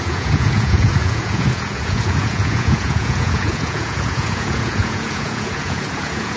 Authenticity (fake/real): fake